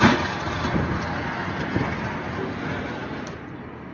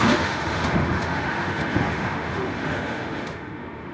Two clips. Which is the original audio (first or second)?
first